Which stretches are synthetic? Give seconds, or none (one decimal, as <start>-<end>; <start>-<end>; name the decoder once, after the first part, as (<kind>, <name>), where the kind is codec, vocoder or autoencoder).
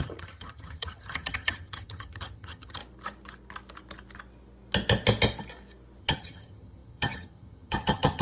0.0-2.8 (vocoder, HiFi-GAN); 6.0-8.2